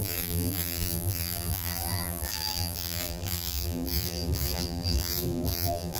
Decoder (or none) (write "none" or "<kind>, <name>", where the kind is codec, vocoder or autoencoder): vocoder, BigVGAN v2